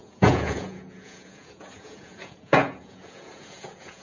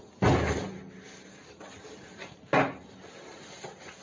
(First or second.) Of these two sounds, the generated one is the first